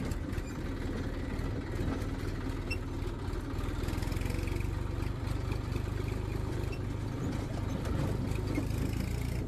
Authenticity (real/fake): real